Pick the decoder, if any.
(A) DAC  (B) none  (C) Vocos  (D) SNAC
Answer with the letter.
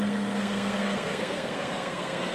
D